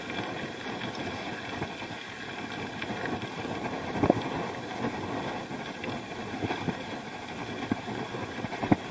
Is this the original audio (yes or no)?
yes